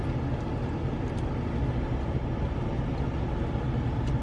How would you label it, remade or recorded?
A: recorded